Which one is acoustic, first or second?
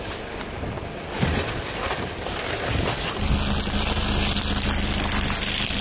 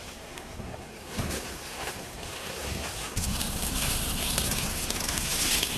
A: first